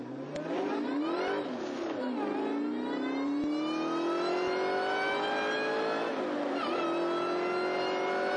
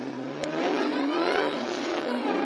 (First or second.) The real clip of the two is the first